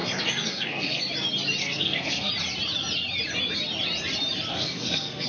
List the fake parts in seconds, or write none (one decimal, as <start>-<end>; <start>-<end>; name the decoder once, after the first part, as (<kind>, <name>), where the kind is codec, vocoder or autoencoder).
0.0-1.0 (codec, SNAC); 1.6-2.3; 4.5-5.3